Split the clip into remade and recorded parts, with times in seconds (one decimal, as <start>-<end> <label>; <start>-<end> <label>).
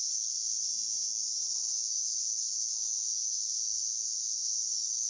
0.0-0.7 remade; 0.7-1.5 recorded; 1.5-5.1 remade